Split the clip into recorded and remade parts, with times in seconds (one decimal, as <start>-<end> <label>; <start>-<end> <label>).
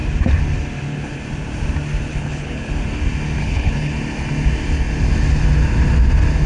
0.0-2.1 recorded; 2.1-2.7 remade; 2.7-3.4 recorded; 3.4-3.9 remade; 3.9-6.5 recorded